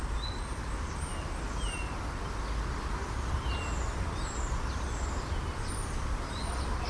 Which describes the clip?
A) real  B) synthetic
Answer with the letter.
A